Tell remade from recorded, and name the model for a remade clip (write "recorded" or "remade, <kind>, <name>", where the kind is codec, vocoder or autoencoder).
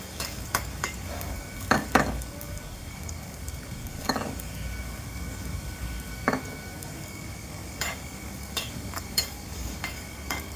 remade, codec, DAC